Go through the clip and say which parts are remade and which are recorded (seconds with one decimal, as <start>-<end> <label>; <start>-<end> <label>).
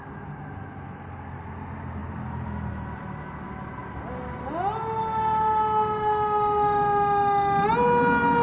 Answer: 0.0-8.4 recorded